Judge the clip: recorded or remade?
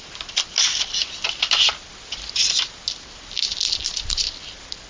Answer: recorded